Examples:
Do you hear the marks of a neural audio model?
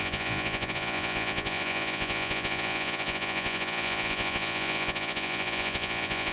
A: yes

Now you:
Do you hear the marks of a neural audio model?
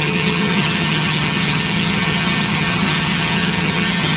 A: yes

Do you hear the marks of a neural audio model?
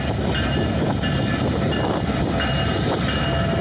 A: no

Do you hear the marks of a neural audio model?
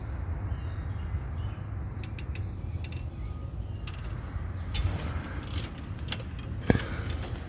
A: no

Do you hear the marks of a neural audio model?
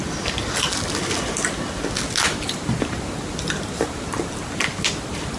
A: no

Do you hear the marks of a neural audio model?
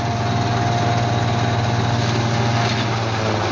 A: no